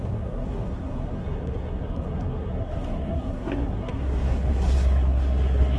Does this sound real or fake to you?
fake